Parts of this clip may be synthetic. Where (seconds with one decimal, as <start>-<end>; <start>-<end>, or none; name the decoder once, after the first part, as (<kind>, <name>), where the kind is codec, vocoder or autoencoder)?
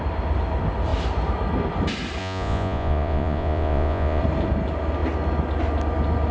2.2-4.2 (vocoder, Vocos)